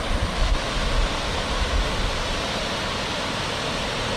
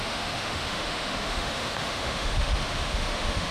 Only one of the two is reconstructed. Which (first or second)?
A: second